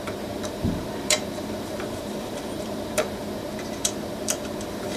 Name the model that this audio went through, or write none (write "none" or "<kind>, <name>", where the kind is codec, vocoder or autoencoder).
vocoder, BigVGAN v2